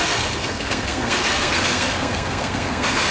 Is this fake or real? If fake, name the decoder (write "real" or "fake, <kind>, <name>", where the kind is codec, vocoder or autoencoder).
fake, codec, SNAC